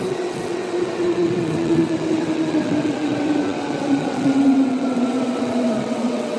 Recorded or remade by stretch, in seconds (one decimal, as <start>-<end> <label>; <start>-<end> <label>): 0.0-6.4 remade